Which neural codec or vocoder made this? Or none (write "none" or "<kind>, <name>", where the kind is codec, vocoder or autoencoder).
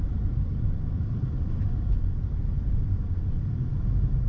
vocoder, BigVGAN v2